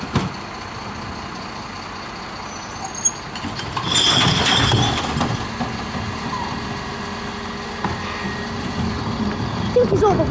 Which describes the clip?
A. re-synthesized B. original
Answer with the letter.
B